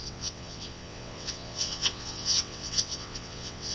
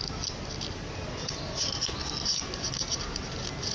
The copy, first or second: first